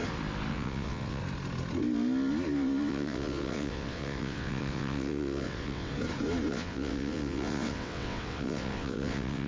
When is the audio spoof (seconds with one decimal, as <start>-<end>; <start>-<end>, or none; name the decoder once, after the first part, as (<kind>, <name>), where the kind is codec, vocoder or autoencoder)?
0.5-1.2 (vocoder, WaveNeXt); 2.9-5.9; 6.5-9.5